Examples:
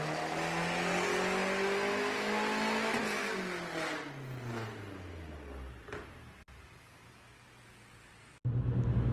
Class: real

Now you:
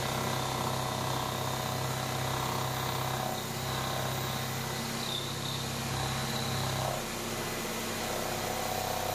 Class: real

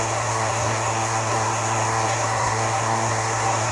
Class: fake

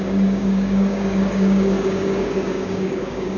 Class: fake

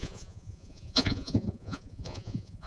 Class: fake